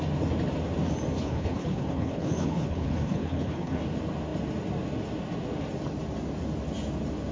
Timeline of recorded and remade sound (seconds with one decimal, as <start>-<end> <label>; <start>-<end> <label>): 0.0-1.2 recorded; 1.2-3.8 remade; 3.8-7.3 recorded